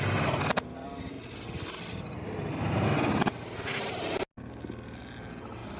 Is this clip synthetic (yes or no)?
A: no